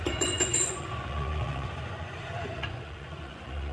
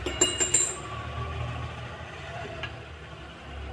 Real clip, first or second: second